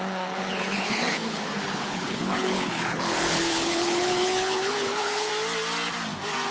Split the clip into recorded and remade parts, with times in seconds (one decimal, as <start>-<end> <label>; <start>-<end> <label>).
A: 0.0-5.3 remade; 5.3-6.5 recorded